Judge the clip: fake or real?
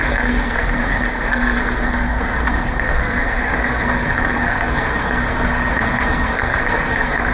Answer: fake